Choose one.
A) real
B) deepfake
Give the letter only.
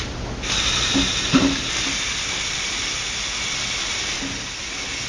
A